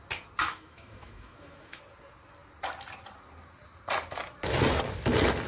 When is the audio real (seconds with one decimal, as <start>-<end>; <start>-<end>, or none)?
0.0-0.4; 1.8-5.5